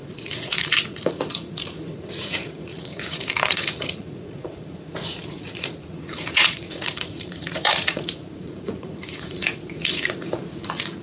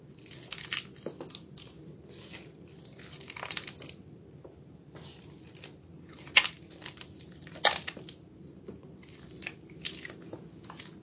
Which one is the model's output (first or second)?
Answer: first